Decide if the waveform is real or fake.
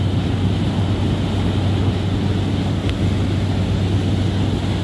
real